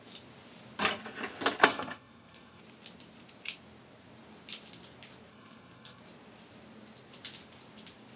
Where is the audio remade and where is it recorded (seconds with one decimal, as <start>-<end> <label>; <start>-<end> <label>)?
0.0-1.6 recorded; 1.6-2.6 remade; 2.6-5.3 recorded; 5.3-6.0 remade; 6.0-8.2 recorded